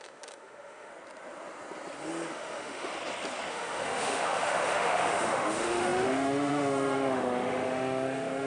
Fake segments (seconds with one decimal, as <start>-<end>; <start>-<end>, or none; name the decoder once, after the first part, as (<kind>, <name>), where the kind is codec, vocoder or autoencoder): 0.0-0.9 (autoencoder, DAC-VAE); 2.3-2.9; 3.5-8.5